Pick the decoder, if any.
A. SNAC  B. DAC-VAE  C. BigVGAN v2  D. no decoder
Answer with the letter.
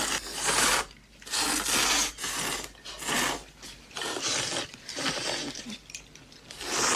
D